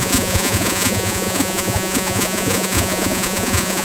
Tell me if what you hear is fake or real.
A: fake